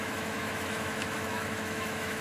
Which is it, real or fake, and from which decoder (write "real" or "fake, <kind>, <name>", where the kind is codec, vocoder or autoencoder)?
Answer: fake, autoencoder, DAC-VAE